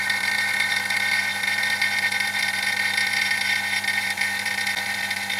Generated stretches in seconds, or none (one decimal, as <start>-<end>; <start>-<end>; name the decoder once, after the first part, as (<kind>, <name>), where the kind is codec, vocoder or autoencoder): none

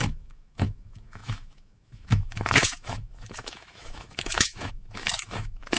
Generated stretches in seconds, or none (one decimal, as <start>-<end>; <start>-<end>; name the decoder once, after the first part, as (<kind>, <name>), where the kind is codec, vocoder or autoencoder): 0.0-5.8 (autoencoder, DAC-VAE)

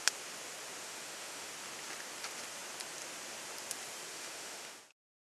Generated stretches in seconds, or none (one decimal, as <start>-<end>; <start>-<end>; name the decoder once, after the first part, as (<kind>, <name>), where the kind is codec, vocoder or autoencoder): 0.8-1.5 (autoencoder, DAC-VAE); 4.1-4.8

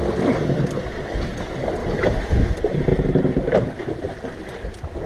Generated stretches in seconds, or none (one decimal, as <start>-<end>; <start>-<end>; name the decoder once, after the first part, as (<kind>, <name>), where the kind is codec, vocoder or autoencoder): 1.8-2.5 (autoencoder, DAC-VAE)

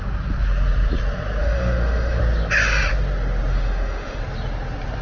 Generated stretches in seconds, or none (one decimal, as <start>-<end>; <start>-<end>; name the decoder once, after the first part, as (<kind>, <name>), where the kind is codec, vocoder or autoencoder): 1.4-2.2 (autoencoder, DAC-VAE); 3.5-4.2

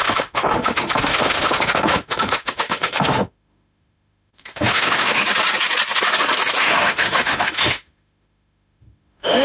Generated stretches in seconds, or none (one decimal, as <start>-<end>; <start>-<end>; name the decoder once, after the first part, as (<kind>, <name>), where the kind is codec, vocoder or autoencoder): 0.0-5.2 (autoencoder, DAC-VAE); 6.6-9.4

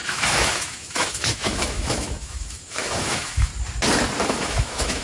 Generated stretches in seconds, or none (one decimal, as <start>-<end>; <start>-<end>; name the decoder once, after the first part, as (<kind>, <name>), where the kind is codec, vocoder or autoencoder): 0.0-3.5 (autoencoder, DAC-VAE); 4.3-5.0